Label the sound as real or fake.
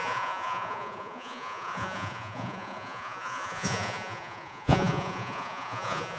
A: fake